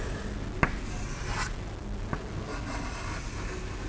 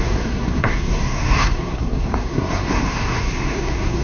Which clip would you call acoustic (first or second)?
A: first